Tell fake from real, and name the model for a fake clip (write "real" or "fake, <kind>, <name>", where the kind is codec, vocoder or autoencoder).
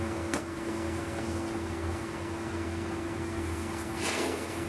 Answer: fake, codec, SNAC